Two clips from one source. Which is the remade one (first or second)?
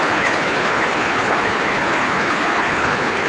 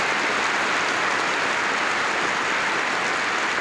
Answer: first